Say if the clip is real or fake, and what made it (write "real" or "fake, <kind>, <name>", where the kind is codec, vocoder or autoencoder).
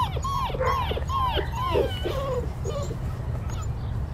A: real